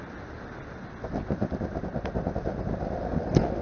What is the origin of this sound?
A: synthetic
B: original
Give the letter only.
B